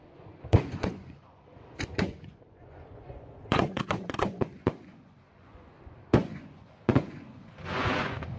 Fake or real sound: fake